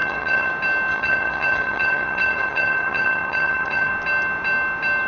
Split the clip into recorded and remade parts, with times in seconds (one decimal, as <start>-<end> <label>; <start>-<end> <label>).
0.0-0.5 remade; 0.5-0.9 recorded; 0.9-3.9 remade; 3.9-5.1 recorded